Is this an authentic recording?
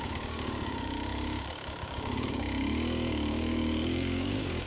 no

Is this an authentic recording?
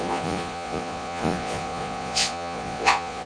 no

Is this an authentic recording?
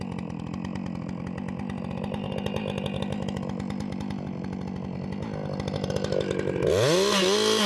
yes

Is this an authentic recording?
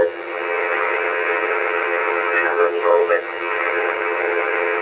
no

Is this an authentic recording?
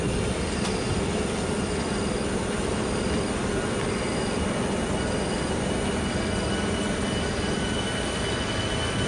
yes